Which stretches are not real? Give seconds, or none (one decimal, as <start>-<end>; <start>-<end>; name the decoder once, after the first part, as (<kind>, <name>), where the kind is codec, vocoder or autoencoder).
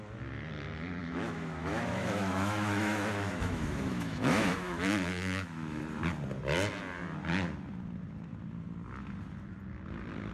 1.0-5.8 (autoencoder, DAC-VAE)